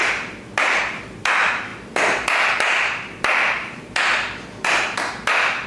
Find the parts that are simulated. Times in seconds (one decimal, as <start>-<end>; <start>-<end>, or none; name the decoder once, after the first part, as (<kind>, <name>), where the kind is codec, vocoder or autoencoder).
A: none